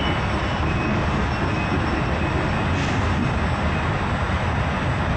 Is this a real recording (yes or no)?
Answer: yes